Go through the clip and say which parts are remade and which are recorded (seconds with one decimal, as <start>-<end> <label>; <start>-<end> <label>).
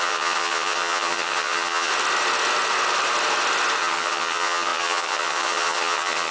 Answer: 0.0-1.9 remade; 1.9-3.8 recorded; 3.8-6.3 remade